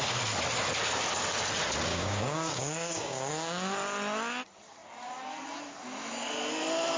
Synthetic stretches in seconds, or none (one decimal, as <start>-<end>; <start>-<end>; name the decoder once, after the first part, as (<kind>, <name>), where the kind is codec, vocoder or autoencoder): 1.9-3.3 (codec, DAC)